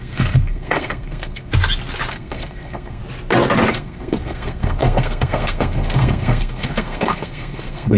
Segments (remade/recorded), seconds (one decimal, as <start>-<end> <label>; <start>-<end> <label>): 0.0-1.5 remade; 1.5-2.1 recorded; 2.1-3.0 remade; 3.0-3.7 recorded; 3.7-8.0 remade